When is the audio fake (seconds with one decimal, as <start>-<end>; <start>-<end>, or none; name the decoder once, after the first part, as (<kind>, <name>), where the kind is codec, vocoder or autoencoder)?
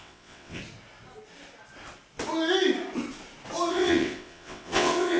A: 0.0-0.6 (vocoder, WaveNeXt); 3.7-5.2